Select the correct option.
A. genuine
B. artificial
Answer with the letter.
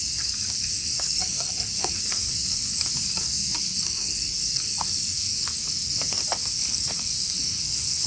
B